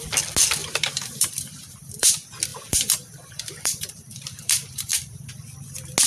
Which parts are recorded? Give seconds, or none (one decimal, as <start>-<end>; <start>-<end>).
0.0-0.6; 2.1-2.5; 5.3-6.1